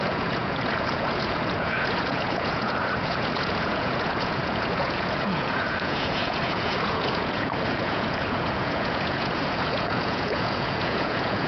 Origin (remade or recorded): remade